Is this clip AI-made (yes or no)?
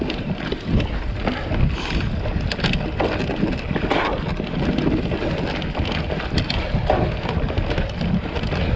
no